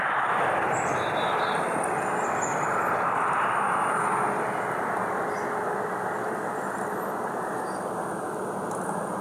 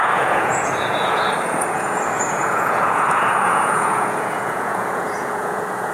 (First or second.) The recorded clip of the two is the first